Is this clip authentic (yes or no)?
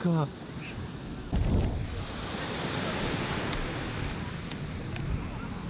yes